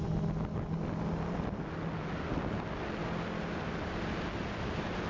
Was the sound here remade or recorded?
recorded